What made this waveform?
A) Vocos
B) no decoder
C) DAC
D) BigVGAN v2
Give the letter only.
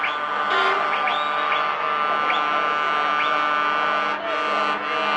B